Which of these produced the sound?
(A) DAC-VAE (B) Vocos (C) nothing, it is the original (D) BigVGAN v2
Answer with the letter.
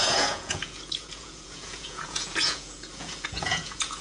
B